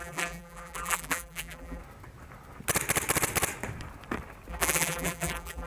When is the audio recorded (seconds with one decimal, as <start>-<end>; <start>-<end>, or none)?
1.8-4.5